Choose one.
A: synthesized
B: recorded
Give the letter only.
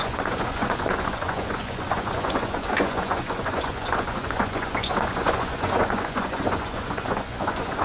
A